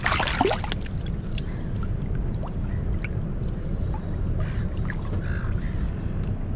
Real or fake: real